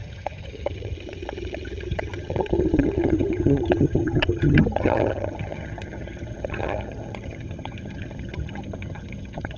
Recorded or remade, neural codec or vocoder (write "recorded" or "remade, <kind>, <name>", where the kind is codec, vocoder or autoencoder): remade, vocoder, HiFi-GAN